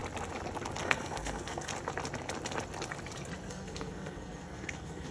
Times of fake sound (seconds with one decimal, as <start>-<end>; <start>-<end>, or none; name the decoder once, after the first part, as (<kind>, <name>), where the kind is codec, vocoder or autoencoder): 0.8-1.7 (codec, SNAC); 3.5-5.1